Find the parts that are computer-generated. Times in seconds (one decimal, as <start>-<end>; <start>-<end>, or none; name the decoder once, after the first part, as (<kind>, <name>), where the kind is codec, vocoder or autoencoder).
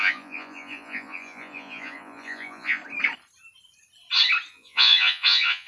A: 0.0-2.8 (vocoder, Vocos); 4.5-5.7